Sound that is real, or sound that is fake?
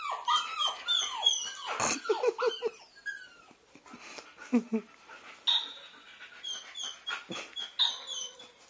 real